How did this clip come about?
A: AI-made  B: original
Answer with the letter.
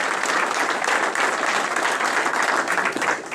B